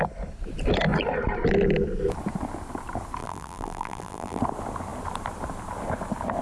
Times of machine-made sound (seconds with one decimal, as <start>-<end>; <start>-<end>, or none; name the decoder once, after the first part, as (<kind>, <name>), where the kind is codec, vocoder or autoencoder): 3.2-4.4 (vocoder, BigVGAN v2)